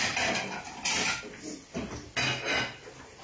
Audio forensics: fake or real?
real